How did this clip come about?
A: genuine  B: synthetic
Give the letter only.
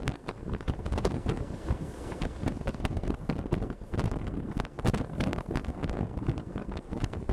B